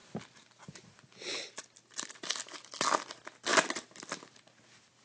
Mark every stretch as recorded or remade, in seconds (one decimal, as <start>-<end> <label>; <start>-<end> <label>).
0.0-5.0 recorded